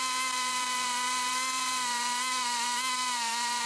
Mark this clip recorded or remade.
remade